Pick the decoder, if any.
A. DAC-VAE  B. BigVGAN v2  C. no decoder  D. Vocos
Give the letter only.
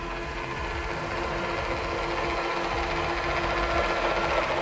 C